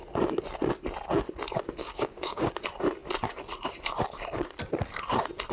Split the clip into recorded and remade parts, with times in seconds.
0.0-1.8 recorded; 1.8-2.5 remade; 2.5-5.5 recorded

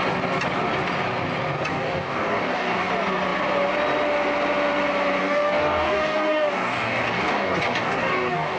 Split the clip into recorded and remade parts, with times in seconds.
0.0-1.7 recorded; 1.7-2.9 remade; 2.9-5.2 recorded; 5.2-8.6 remade

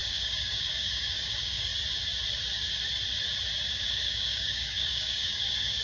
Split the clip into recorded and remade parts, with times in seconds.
0.0-1.7 remade; 1.7-3.7 recorded; 3.7-5.8 remade

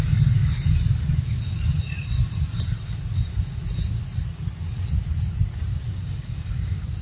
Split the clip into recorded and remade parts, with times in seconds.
0.0-5.9 recorded; 5.9-7.0 remade

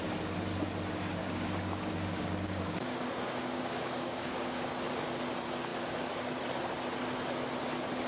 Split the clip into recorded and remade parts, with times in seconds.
0.0-1.2 recorded; 1.2-4.7 remade; 4.7-8.1 recorded